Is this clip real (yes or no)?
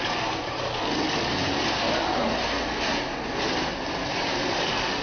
yes